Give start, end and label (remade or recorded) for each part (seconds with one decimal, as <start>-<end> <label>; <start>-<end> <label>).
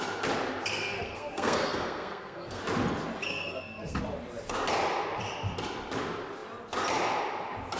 0.0-0.7 recorded; 0.7-2.6 remade; 2.6-3.2 recorded; 3.2-4.0 remade; 4.0-7.8 recorded